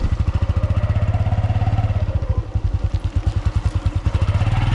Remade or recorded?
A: recorded